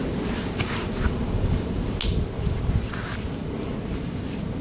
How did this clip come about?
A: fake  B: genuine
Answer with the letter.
B